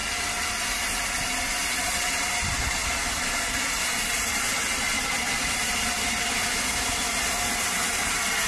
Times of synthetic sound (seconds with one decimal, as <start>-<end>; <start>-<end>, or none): none